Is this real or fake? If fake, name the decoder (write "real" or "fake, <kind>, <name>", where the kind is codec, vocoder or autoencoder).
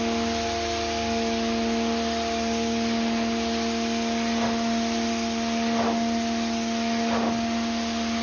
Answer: real